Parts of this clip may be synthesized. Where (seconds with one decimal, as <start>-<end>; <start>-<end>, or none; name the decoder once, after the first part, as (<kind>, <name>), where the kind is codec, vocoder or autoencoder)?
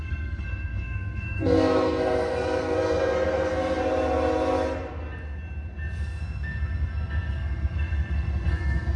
0.0-3.8 (codec, SNAC); 6.0-9.0